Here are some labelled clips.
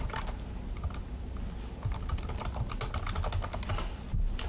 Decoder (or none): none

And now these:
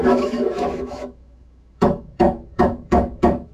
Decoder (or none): autoencoder, DAC-VAE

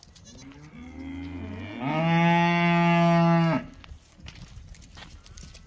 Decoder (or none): none